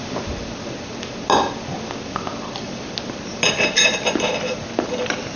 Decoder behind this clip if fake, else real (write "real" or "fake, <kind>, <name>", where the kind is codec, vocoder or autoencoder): real